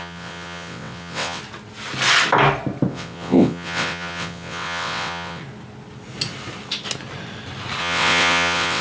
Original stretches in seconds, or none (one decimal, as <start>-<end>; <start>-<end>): 1.4-2.9; 5.4-7.8